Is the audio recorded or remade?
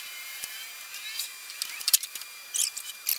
remade